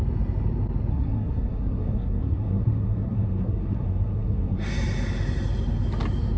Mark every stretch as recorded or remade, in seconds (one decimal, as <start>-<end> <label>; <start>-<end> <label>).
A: 0.0-0.9 recorded; 0.9-4.7 remade; 4.7-6.4 recorded